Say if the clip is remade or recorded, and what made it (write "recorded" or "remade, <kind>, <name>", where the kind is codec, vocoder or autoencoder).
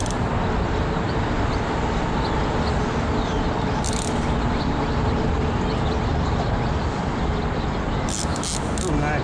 recorded